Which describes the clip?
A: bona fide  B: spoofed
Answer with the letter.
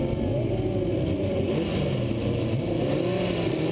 A